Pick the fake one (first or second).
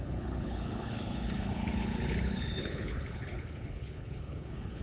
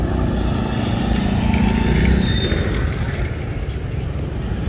first